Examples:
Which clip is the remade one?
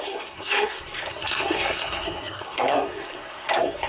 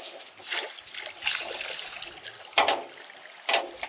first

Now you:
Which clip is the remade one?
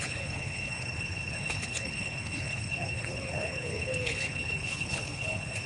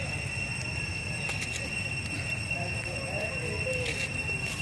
first